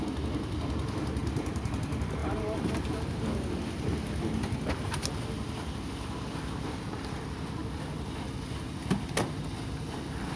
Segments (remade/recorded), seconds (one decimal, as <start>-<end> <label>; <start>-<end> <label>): 0.0-1.2 recorded; 1.2-1.7 remade; 1.7-2.2 recorded; 2.2-3.2 remade; 3.2-10.4 recorded

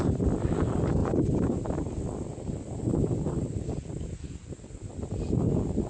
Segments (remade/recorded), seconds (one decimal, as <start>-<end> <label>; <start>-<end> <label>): 0.0-5.9 recorded

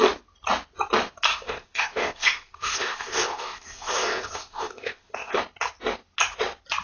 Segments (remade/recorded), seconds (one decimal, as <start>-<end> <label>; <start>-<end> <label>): 0.0-1.3 recorded; 1.3-5.4 remade; 5.4-6.8 recorded